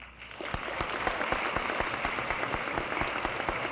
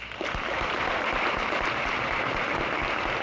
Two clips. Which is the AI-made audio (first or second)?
second